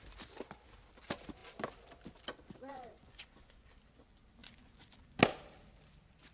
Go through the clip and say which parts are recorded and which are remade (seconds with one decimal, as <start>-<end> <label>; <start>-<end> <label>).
0.0-2.7 recorded; 2.7-3.7 remade; 3.7-4.4 recorded; 4.4-5.2 remade; 5.2-6.3 recorded

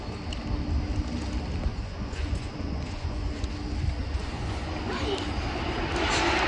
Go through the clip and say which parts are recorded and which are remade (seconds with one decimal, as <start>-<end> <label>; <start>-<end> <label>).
0.0-1.7 recorded; 1.7-3.5 remade; 3.5-4.0 recorded; 4.0-4.7 remade; 4.7-6.5 recorded

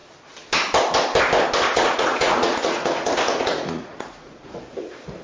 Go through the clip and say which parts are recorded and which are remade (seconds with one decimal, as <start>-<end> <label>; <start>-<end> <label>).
0.0-1.7 recorded; 1.7-4.6 remade; 4.6-5.2 recorded

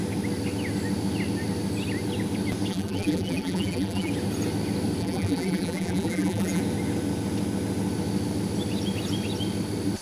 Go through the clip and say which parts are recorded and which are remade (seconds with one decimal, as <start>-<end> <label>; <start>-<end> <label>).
0.0-2.7 recorded; 2.7-4.1 remade; 4.1-5.0 recorded; 5.0-6.6 remade; 6.6-10.0 recorded

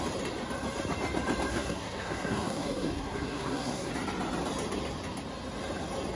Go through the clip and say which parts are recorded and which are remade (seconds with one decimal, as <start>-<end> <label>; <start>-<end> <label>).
0.0-1.5 recorded; 1.5-3.9 remade; 3.9-6.2 recorded